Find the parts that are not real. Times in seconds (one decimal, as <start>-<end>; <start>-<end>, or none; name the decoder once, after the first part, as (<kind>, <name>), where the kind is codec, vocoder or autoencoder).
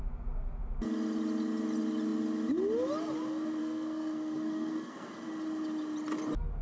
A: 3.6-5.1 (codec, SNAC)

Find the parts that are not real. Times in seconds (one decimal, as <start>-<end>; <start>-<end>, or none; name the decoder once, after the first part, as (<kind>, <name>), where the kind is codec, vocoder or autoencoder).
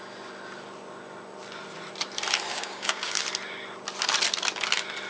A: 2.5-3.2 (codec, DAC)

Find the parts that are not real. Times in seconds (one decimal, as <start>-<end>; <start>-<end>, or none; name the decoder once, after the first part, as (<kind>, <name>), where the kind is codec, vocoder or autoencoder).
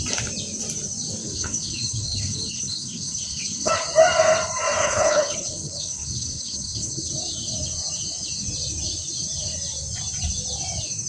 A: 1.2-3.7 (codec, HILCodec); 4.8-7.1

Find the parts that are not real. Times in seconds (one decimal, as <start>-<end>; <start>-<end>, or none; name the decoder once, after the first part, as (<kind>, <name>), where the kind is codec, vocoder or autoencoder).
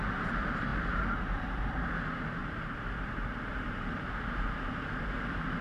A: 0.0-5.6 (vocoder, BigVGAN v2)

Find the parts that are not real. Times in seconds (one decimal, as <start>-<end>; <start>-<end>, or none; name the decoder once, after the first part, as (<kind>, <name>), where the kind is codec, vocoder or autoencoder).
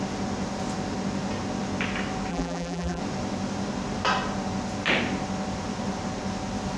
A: 2.3-3.0 (vocoder, BigVGAN v2)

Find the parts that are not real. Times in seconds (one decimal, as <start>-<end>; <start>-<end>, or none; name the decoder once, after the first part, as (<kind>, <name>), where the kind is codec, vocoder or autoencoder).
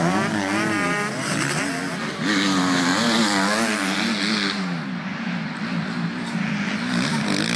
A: none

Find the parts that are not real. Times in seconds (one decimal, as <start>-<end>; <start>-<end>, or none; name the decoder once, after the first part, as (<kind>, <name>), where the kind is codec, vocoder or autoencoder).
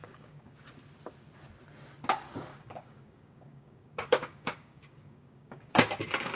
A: 0.0-0.7 (codec, DAC); 2.5-6.4